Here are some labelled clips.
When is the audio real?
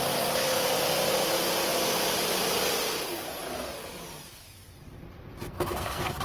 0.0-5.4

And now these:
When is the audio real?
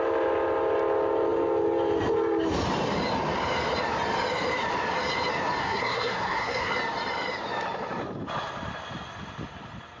0.0-5.6; 6.7-10.0